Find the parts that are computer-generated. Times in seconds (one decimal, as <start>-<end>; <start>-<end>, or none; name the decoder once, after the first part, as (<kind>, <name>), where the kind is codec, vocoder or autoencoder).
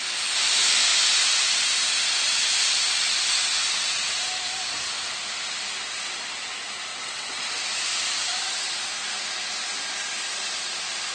6.9-7.4 (vocoder, WaveNeXt)